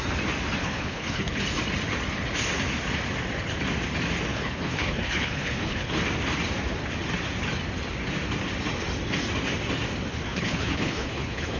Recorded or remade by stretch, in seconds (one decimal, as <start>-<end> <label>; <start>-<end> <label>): 0.0-0.6 recorded; 0.6-1.4 remade; 1.4-4.3 recorded; 4.3-6.0 remade; 6.0-10.1 recorded; 10.1-11.6 remade